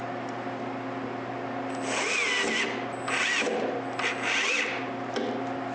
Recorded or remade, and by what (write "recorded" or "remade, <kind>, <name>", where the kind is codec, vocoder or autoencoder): recorded